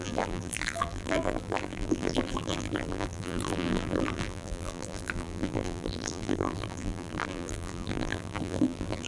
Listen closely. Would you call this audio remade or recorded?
remade